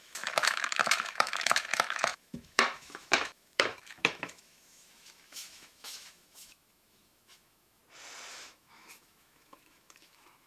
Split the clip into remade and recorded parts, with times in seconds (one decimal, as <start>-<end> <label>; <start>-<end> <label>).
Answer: 0.0-7.8 remade; 7.8-8.3 recorded; 8.3-10.5 remade